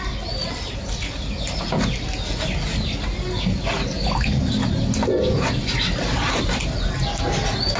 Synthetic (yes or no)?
no